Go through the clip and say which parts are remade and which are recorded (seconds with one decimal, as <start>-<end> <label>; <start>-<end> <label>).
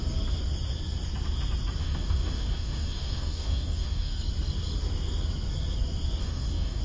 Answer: 0.0-1.8 recorded; 1.8-4.2 remade; 4.2-6.2 recorded; 6.2-6.8 remade